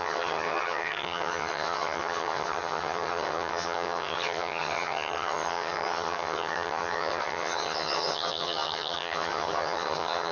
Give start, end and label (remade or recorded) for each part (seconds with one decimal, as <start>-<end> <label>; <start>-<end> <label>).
0.0-10.3 remade